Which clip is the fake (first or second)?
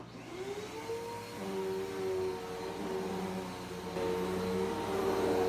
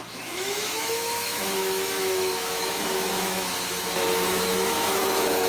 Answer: second